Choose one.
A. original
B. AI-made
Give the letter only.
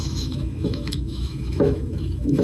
B